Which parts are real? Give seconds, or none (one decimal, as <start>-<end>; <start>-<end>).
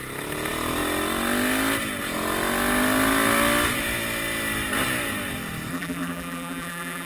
0.0-5.7